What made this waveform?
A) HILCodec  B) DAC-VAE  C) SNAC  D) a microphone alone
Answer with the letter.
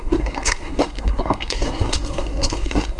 C